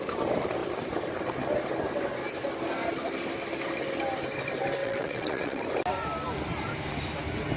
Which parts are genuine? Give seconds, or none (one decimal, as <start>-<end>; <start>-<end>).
0.0-4.8; 5.6-7.6